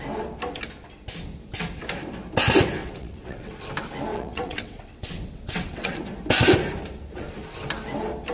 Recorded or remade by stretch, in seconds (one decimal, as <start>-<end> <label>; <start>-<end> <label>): 0.0-2.8 recorded; 2.8-3.5 remade; 3.5-4.1 recorded; 4.1-6.0 remade; 6.0-8.3 recorded